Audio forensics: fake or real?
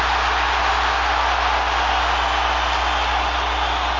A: real